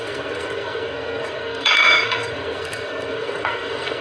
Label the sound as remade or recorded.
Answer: remade